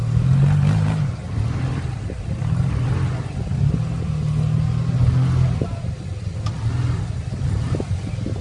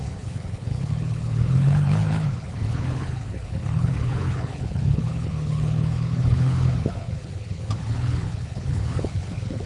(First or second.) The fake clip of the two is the second